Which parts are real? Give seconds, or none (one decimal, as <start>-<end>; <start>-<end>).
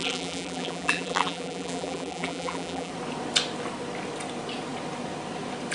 2.9-5.7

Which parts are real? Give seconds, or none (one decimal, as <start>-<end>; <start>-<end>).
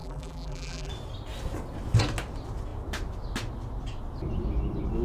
0.9-5.0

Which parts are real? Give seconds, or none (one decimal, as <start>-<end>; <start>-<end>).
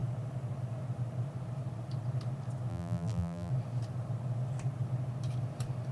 0.0-2.7; 3.5-5.9